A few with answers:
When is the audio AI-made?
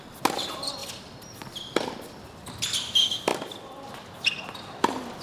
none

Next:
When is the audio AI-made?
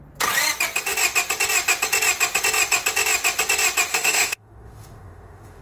3.9-5.6 (autoencoder, DAC-VAE)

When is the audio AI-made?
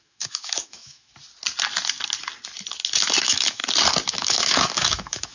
0.0-1.1 (autoencoder, DAC-VAE); 3.2-3.6; 4.1-5.3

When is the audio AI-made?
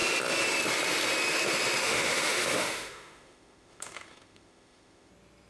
1.8-5.1 (autoencoder, DAC-VAE)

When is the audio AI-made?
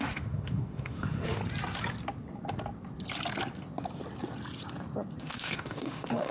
0.0-1.4 (autoencoder, DAC-VAE); 5.2-6.3